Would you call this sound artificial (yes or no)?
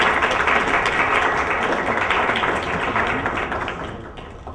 no